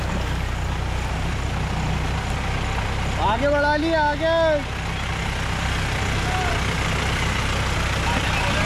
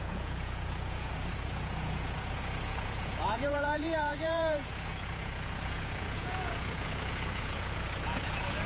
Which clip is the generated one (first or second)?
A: second